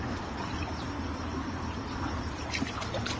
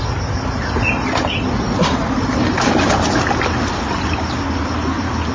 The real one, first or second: second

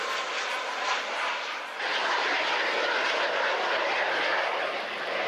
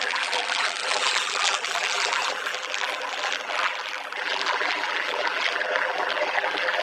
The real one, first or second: first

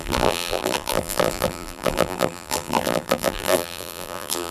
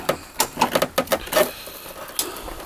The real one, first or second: second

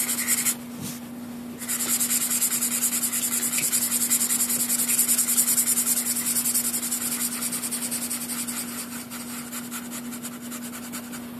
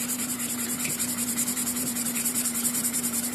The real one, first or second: first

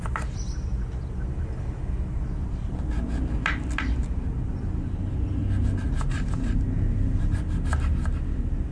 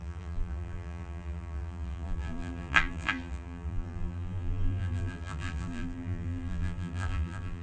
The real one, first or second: first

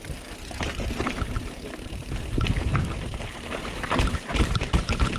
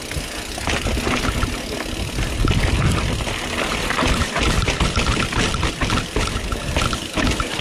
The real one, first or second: second